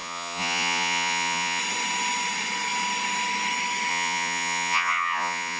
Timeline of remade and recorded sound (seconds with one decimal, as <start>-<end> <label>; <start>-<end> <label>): 0.0-1.6 remade; 1.6-3.9 recorded; 3.9-5.6 remade